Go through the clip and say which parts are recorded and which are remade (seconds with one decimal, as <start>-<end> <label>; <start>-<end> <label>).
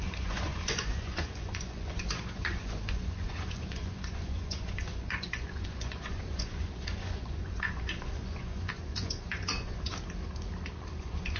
0.0-9.9 remade; 9.9-11.0 recorded; 11.0-11.4 remade